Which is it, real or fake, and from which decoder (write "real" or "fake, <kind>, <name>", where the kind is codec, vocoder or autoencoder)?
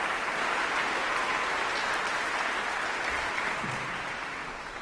real